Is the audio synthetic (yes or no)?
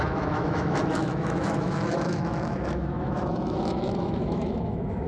yes